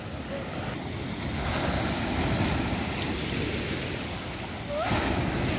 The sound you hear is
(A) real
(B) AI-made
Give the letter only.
A